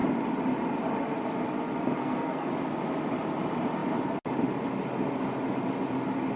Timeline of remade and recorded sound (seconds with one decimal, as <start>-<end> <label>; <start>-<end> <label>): 0.0-2.0 recorded; 2.0-2.5 remade; 2.5-6.4 recorded